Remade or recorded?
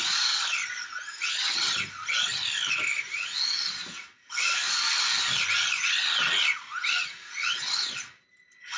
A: recorded